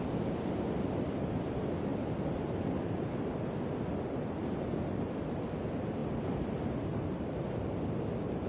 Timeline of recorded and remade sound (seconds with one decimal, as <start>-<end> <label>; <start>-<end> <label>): 0.0-8.5 recorded